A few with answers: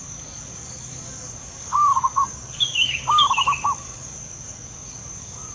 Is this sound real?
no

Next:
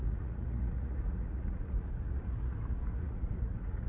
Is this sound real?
no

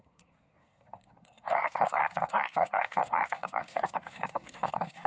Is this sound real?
no